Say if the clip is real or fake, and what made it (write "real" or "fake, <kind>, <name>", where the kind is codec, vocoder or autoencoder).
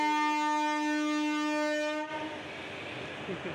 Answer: real